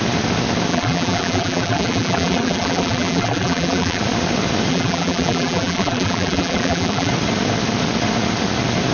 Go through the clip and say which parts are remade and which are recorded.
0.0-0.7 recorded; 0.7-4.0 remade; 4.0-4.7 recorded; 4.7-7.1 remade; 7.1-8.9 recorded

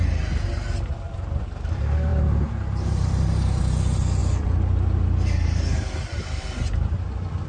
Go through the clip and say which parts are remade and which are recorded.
0.0-2.1 recorded; 2.1-3.6 remade; 3.6-7.5 recorded

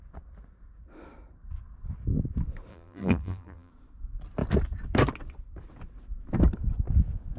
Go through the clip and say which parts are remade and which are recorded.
0.0-2.7 recorded; 2.7-3.7 remade; 3.7-7.4 recorded